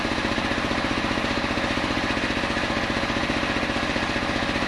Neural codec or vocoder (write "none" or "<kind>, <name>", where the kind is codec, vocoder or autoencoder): none